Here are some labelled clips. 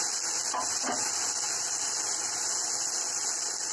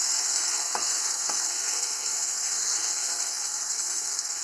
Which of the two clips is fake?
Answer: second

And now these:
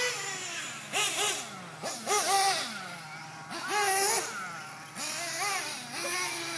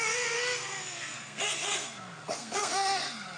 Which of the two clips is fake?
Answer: second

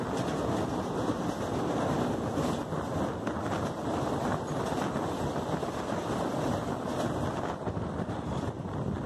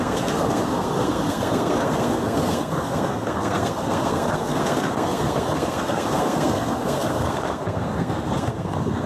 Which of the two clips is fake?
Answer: second